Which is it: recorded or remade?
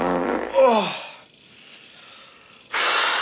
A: recorded